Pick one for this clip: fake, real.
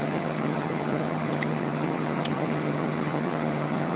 fake